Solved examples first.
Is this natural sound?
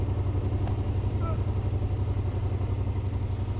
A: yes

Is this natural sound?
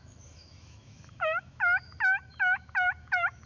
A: no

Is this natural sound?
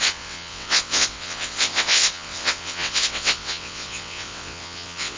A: no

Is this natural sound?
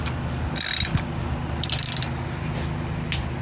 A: yes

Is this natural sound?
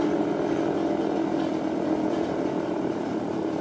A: yes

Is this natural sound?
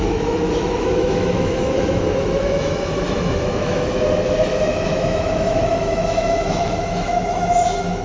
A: no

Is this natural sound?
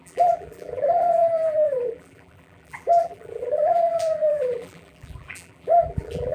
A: no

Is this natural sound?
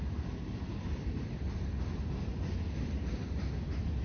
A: yes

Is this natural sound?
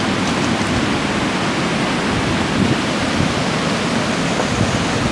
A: yes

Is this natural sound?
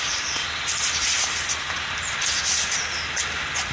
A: yes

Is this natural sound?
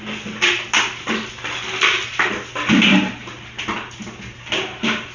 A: yes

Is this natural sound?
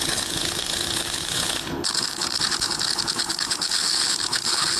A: no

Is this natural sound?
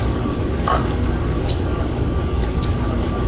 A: no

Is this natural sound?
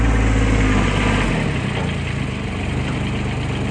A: yes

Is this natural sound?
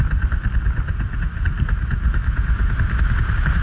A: yes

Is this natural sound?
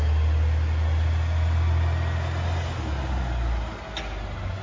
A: yes